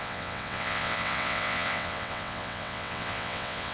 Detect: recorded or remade remade